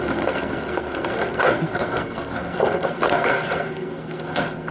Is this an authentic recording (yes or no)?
no